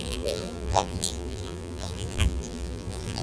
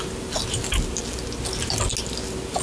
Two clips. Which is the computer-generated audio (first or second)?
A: first